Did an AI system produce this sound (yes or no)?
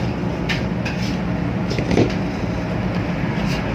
no